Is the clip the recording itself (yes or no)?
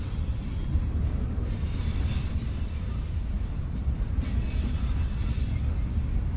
yes